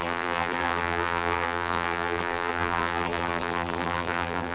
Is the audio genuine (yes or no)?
no